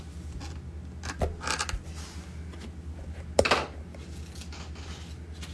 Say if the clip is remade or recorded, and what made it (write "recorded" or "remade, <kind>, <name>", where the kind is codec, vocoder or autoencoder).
recorded